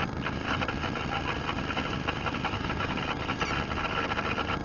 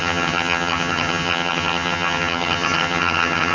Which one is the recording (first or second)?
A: first